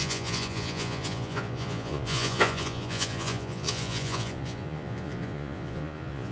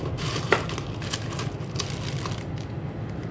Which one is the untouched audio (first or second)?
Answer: second